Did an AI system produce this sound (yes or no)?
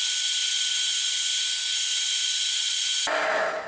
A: no